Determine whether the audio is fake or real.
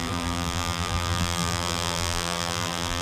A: fake